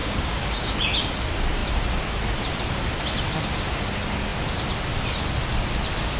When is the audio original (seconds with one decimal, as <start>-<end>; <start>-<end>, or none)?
0.7-6.2